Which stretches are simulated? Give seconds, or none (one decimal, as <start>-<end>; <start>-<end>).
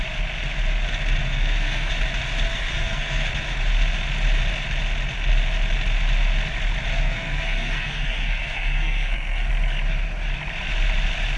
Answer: 1.2-1.9; 2.5-3.3; 6.9-9.5